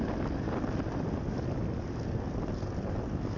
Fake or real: real